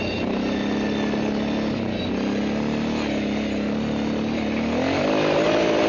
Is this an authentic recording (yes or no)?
yes